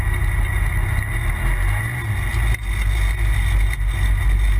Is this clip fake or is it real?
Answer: real